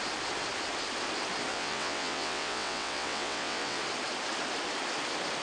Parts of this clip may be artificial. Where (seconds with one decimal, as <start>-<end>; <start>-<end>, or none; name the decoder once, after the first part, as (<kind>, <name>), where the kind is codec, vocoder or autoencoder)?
1.5-3.8 (vocoder, WaveNeXt)